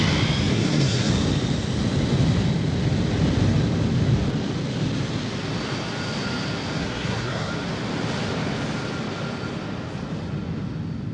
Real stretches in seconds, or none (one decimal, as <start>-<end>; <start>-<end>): 0.0-0.5; 1.1-6.8; 7.5-11.1